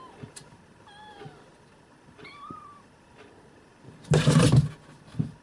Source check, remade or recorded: recorded